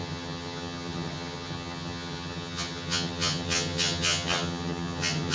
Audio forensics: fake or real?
fake